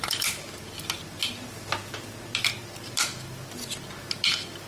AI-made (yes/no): no